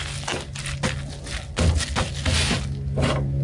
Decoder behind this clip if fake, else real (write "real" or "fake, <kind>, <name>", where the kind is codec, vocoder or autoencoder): real